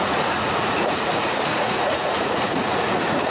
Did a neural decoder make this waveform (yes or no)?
yes